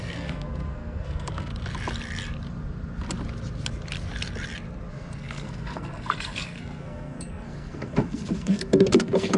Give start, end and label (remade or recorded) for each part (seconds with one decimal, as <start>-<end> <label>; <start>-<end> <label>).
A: 0.0-1.5 remade; 1.5-4.9 recorded; 4.9-9.4 remade